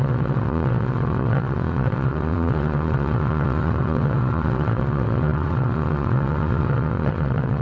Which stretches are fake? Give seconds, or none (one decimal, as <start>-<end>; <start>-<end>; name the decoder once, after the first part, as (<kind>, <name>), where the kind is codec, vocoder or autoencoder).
0.0-7.6 (vocoder, WaveNeXt)